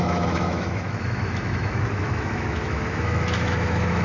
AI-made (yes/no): yes